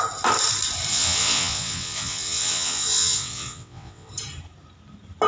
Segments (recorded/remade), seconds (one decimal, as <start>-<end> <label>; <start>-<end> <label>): 0.0-0.9 recorded; 0.9-4.1 remade; 4.1-5.3 recorded